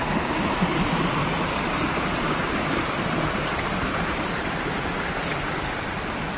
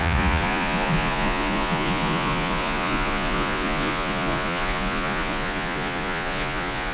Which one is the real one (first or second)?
first